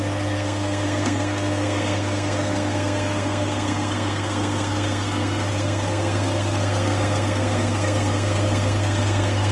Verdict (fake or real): fake